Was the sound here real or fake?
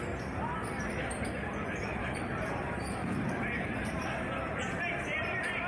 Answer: fake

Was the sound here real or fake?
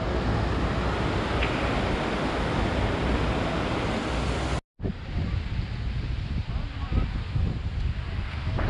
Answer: real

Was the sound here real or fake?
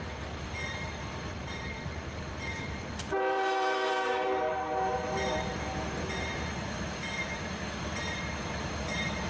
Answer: fake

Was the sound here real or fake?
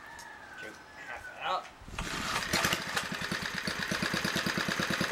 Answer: real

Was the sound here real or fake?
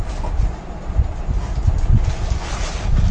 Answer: real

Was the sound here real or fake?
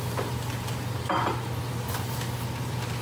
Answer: real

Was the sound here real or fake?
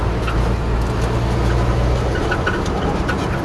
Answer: real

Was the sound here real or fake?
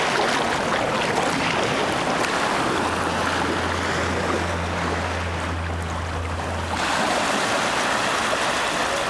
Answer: real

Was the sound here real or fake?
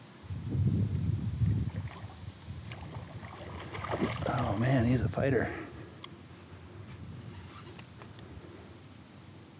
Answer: real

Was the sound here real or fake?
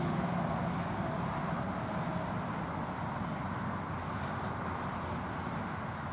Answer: real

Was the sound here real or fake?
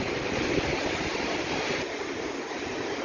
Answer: fake